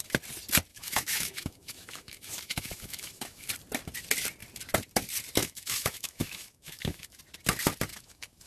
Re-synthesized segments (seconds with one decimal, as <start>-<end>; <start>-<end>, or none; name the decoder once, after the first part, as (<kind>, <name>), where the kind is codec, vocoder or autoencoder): 0.7-3.5 (autoencoder, DAC-VAE); 5.4-7.2; 7.9-8.5